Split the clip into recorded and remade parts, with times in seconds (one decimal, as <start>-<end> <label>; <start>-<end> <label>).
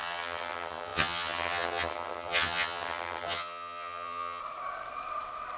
0.0-4.4 remade; 4.4-5.6 recorded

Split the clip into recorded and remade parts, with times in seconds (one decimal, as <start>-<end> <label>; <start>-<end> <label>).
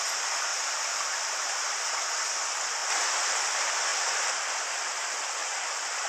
0.0-2.8 recorded; 2.8-3.4 remade; 3.4-5.4 recorded; 5.4-6.1 remade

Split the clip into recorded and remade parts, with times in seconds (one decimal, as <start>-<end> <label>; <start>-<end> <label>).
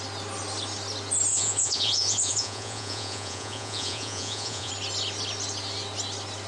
0.0-1.3 recorded; 1.3-4.7 remade; 4.7-6.5 recorded